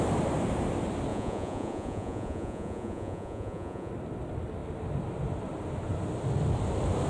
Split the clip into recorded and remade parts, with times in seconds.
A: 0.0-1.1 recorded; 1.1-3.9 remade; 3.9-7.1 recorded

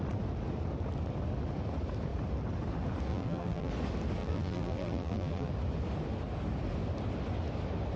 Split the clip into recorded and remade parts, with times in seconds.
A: 0.0-3.1 recorded; 3.1-3.7 remade; 3.7-4.2 recorded; 4.2-5.5 remade; 5.5-8.0 recorded

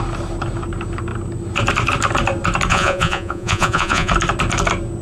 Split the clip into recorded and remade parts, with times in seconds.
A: 0.0-2.7 recorded; 2.7-4.1 remade; 4.1-5.0 recorded

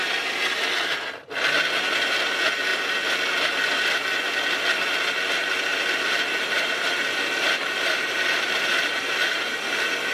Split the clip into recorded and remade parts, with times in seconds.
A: 0.0-5.7 recorded; 5.7-9.5 remade; 9.5-10.1 recorded